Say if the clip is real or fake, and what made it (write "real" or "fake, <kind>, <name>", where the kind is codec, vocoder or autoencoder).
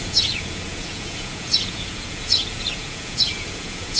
fake, vocoder, Vocos